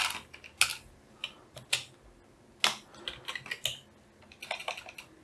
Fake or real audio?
real